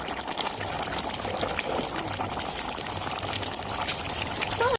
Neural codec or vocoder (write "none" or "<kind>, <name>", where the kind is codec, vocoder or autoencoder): none